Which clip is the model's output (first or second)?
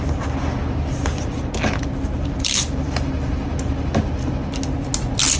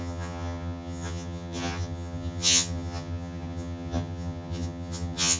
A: second